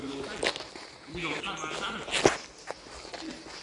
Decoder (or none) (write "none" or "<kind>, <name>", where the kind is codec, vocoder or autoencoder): none